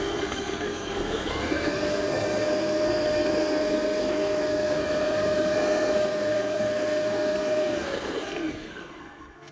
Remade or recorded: remade